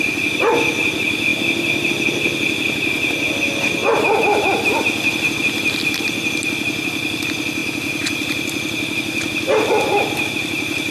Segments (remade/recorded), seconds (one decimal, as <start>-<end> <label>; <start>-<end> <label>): 0.0-10.9 recorded